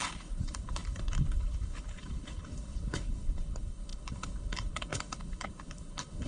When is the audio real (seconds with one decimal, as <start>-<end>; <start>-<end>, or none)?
none